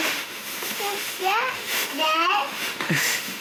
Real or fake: fake